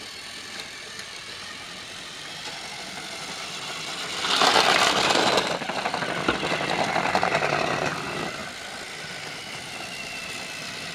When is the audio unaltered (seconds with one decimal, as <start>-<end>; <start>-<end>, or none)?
0.0-10.9

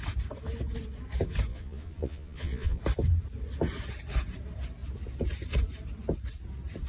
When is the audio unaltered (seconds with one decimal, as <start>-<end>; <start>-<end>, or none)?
0.0-1.5; 2.8-6.9

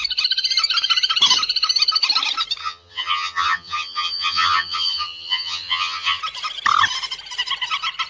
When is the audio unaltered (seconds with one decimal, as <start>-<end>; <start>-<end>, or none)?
0.0-2.6; 6.2-8.1

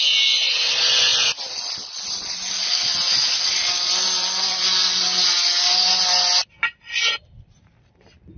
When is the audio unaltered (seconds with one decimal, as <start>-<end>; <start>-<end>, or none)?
none

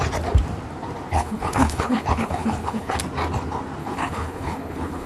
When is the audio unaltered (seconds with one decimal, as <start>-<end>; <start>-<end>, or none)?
0.0-1.1; 3.0-3.8

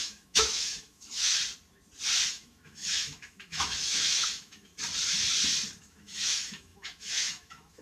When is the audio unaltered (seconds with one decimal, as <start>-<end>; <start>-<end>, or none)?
1.4-2.3; 4.7-5.8